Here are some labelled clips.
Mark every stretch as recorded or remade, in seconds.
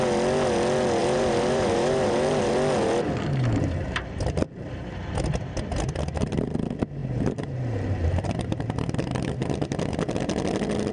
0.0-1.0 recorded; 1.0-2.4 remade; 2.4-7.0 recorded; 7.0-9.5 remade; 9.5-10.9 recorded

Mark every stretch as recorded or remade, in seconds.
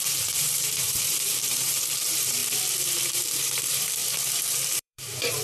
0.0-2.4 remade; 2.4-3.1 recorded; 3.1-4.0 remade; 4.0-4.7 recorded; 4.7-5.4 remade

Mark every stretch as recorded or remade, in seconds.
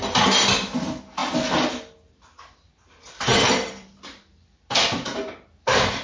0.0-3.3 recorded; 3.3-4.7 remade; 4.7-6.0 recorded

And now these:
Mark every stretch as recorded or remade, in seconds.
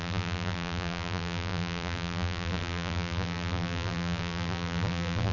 0.0-5.3 remade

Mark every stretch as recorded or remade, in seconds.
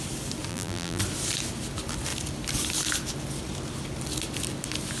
0.0-0.5 recorded; 0.5-1.0 remade; 1.0-5.0 recorded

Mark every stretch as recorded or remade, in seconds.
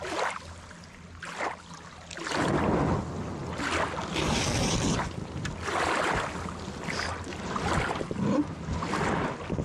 0.0-9.6 recorded